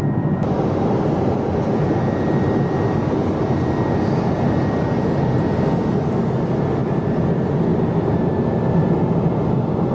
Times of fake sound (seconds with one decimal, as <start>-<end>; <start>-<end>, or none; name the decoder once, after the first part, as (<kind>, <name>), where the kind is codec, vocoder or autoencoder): none